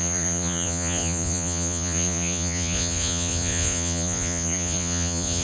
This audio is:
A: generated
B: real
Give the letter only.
A